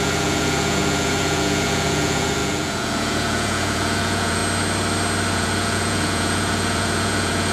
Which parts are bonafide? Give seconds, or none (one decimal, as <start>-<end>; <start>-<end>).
4.4-5.3